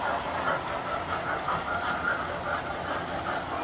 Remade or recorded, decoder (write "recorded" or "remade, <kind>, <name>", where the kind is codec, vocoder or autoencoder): recorded